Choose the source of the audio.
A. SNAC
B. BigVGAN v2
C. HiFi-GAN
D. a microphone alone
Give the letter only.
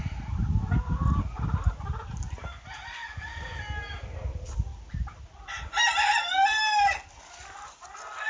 D